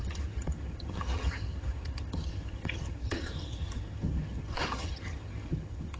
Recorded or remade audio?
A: remade